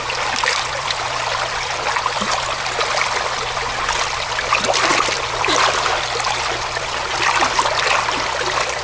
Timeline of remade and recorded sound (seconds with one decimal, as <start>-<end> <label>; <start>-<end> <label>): 0.0-8.8 recorded